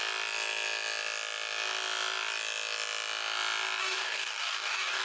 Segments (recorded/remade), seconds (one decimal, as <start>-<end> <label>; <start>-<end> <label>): 0.0-3.8 recorded; 3.8-5.0 remade